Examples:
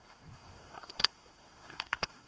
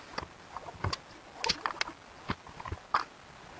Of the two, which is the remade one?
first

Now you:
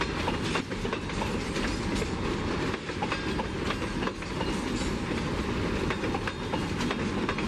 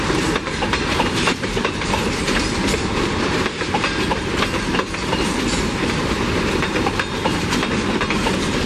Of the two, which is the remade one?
second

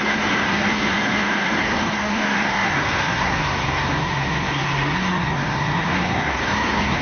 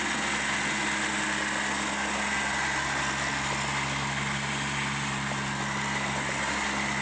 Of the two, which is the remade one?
first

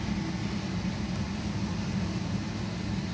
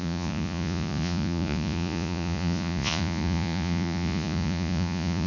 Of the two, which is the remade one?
second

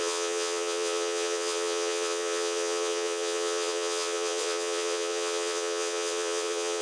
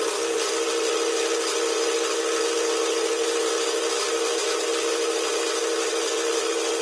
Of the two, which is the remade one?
first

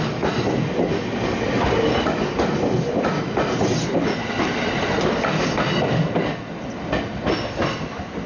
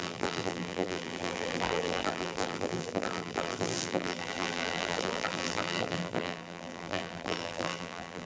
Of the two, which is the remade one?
second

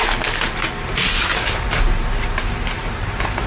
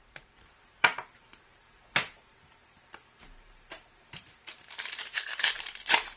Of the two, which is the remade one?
second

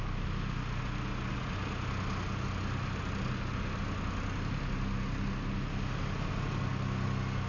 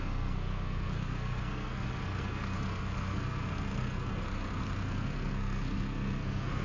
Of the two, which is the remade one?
second